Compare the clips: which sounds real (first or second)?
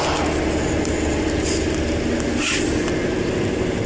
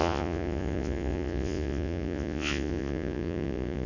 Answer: first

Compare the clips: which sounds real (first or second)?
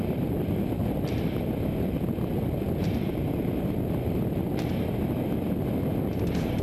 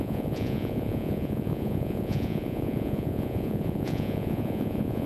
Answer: first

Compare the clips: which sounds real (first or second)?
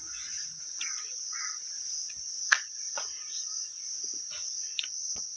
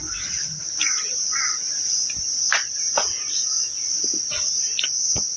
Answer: second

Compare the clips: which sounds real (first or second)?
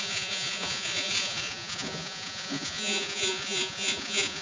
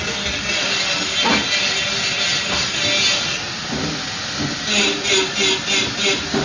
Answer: second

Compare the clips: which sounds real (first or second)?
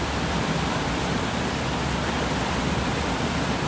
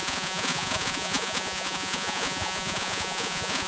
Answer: first